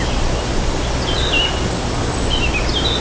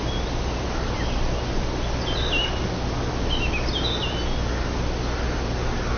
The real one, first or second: second